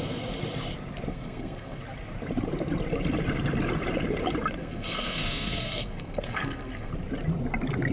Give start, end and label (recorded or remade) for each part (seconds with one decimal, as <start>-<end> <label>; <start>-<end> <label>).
0.0-1.1 recorded; 1.1-1.8 remade; 1.8-4.6 recorded; 4.6-6.9 remade; 6.9-7.9 recorded